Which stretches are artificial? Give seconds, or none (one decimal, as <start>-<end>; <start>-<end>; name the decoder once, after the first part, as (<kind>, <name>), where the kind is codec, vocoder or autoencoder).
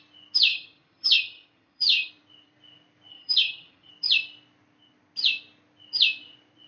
0.5-2.1 (vocoder, HiFi-GAN); 3.1-3.9